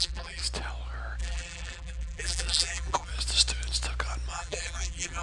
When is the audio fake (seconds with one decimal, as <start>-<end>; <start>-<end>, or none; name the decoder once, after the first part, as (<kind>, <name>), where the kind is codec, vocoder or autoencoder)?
0.0-0.4 (vocoder, BigVGAN v2); 1.2-3.1; 4.3-5.2